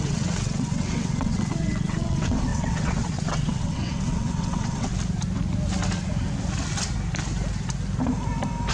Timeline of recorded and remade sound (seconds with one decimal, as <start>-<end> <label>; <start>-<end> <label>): 0.0-4.9 remade; 4.9-8.7 recorded